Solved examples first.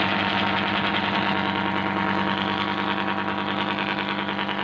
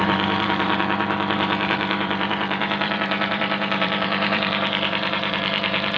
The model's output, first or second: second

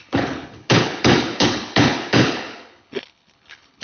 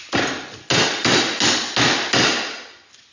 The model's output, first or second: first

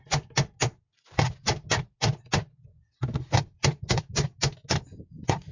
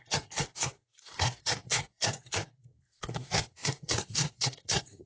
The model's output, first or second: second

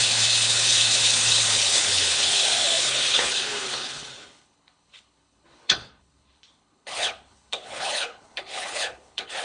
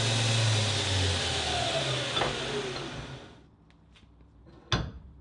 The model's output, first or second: first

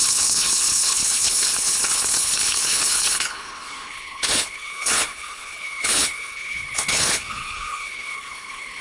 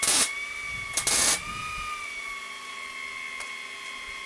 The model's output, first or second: first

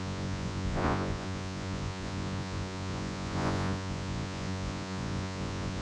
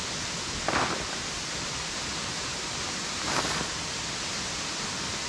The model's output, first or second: first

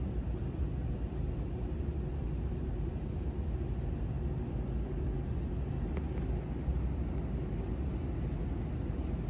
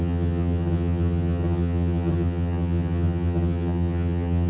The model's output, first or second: second